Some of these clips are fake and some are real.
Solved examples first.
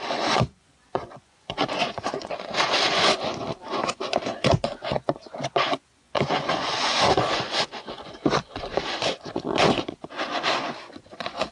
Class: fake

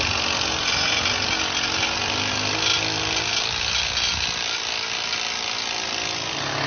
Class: real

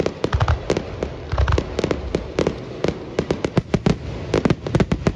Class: real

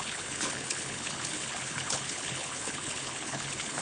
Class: fake